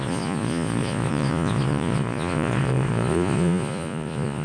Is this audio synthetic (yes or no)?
yes